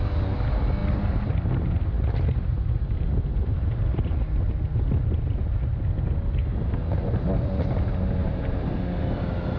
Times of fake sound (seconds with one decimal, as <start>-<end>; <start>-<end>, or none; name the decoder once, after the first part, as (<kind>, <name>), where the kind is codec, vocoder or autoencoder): 2.5-4.2 (vocoder, BigVGAN v2); 8.2-8.7

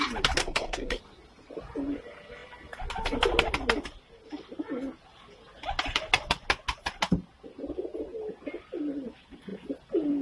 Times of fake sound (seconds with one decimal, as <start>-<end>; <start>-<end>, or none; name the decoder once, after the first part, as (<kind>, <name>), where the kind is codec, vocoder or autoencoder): 0.4-1.0 (codec, SNAC)